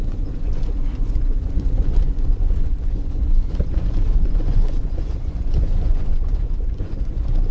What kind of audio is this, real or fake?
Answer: fake